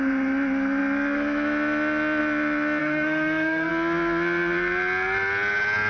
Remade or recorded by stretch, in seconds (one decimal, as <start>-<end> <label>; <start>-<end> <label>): 0.0-2.8 recorded; 2.8-3.7 remade; 3.7-5.9 recorded